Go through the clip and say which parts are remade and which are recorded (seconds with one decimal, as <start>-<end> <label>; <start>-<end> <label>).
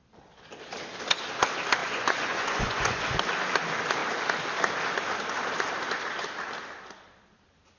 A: 0.0-1.8 recorded; 1.8-3.0 remade; 3.0-7.8 recorded